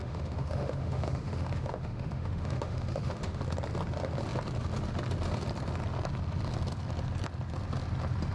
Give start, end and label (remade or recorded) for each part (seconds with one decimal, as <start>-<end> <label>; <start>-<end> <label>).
0.0-3.4 remade; 3.4-8.3 recorded